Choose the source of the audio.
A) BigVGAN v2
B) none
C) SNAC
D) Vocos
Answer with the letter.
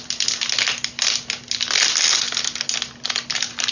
B